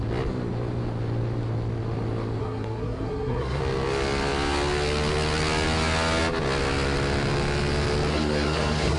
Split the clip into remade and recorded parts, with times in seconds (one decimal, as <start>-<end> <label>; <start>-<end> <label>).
0.0-2.4 recorded; 2.4-3.6 remade; 3.6-8.1 recorded; 8.1-9.0 remade